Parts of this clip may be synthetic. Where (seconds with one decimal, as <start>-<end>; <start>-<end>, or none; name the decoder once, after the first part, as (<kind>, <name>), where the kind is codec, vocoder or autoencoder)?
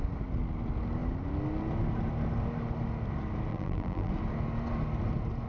3.5-4.1 (vocoder, BigVGAN v2)